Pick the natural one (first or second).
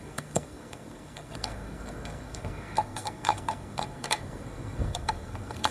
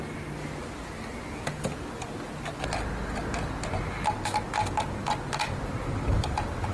second